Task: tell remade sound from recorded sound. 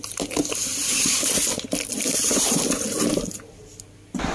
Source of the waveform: recorded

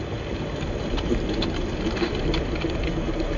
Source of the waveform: recorded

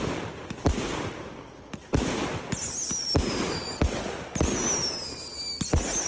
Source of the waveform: recorded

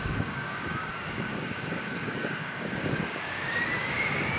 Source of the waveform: remade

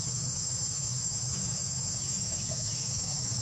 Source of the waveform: remade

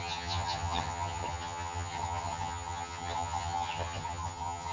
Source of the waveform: remade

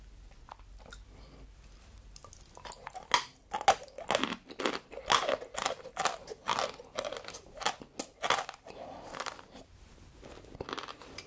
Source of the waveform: recorded